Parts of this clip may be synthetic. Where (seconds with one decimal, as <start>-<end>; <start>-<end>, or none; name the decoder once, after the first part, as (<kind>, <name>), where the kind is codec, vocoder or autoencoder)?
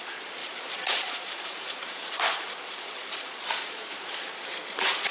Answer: 0.0-5.1 (vocoder, Vocos)